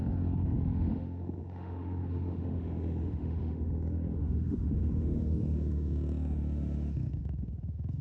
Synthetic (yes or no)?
yes